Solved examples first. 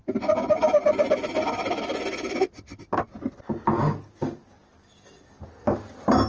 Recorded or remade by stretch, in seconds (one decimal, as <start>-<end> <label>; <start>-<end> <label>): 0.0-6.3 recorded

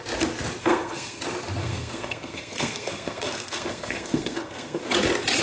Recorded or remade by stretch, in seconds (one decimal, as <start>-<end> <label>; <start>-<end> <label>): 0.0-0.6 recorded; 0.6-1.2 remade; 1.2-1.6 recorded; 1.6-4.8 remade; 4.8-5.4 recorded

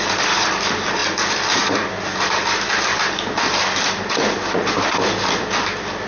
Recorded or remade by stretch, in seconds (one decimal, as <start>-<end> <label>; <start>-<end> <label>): 0.0-6.1 recorded

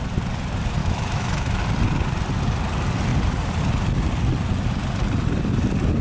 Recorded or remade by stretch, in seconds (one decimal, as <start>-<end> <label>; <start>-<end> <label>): 0.0-0.8 recorded; 0.8-1.6 remade; 1.6-6.0 recorded